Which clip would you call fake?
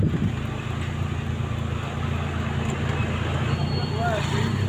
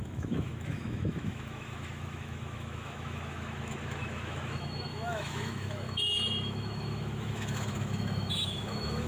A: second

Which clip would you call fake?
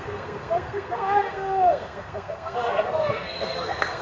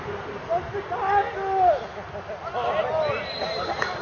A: first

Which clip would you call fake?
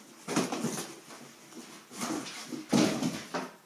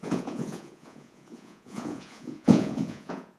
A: second